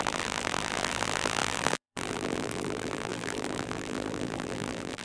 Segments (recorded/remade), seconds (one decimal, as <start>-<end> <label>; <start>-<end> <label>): 0.0-5.0 remade